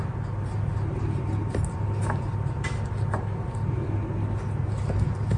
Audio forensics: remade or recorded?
recorded